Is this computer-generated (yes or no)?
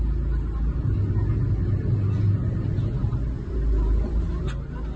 no